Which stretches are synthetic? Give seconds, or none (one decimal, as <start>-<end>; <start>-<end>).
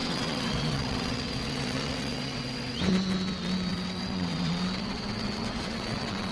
0.0-2.8; 3.7-6.3